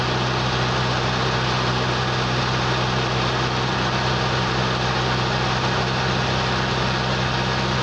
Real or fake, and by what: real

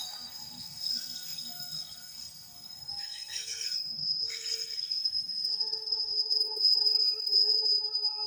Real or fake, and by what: fake, codec, SNAC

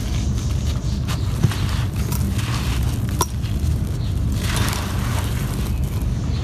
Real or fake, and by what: real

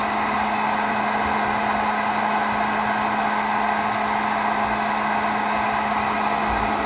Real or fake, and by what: real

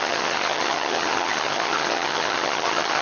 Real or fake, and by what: fake, vocoder, HiFi-GAN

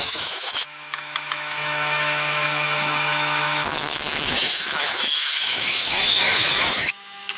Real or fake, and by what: fake, autoencoder, DAC-VAE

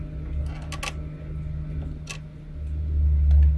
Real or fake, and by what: real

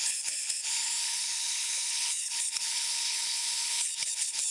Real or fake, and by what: fake, codec, HILCodec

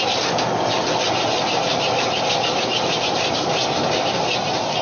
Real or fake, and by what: real